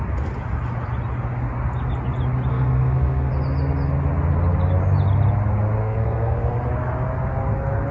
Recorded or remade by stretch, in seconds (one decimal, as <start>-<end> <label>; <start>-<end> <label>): 0.0-2.5 recorded; 2.5-3.3 remade; 3.3-5.8 recorded; 5.8-6.5 remade; 6.5-7.9 recorded